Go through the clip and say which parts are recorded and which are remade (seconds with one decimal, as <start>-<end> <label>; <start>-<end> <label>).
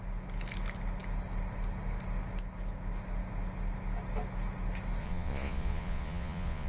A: 0.0-5.0 recorded; 5.0-6.7 remade